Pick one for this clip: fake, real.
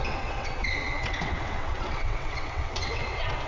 fake